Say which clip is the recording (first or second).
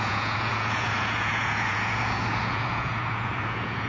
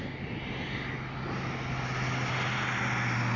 second